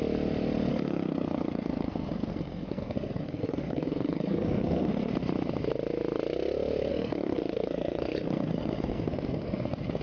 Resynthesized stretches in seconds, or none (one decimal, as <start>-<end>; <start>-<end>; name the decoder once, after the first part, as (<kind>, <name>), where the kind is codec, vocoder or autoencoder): 0.7-5.1 (codec, SNAC); 6.9-10.0

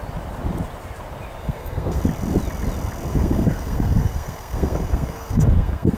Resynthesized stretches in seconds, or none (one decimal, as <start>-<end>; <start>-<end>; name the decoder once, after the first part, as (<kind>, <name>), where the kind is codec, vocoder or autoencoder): 1.4-2.0 (codec, SNAC); 3.1-6.0

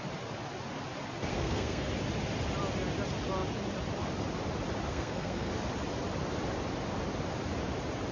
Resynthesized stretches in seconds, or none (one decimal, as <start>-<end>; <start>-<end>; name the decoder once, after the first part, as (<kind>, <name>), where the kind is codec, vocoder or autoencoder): 1.3-1.9 (codec, SNAC); 4.9-5.5

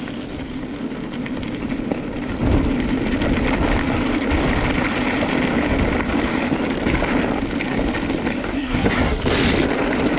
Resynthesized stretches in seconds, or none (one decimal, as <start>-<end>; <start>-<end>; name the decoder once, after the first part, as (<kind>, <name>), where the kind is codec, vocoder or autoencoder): 8.4-9.2 (codec, SNAC)

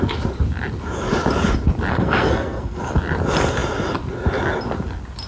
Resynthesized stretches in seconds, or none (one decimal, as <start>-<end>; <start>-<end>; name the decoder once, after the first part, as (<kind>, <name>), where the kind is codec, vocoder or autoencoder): 1.9-2.8 (codec, SNAC)

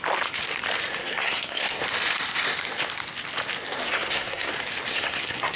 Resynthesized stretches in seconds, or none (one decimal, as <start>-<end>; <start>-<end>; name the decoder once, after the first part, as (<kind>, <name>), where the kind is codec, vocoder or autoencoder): 1.0-1.8 (codec, SNAC); 3.8-4.5; 4.9-5.6

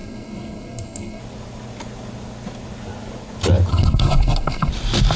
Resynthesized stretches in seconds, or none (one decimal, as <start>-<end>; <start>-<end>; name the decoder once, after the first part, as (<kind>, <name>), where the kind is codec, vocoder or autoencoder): 0.0-1.2 (codec, SNAC); 3.7-4.7